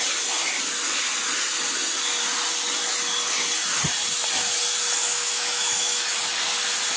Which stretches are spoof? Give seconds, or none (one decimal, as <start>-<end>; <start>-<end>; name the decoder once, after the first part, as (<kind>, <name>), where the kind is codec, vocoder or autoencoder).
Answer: 5.0-6.1 (autoencoder, DAC-VAE)